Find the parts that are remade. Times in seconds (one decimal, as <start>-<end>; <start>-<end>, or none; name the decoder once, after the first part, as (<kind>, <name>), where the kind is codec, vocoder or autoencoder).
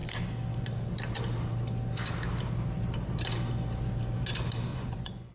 4.7-5.3 (vocoder, Vocos)